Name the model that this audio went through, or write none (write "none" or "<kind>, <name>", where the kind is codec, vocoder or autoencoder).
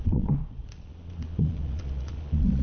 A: vocoder, Vocos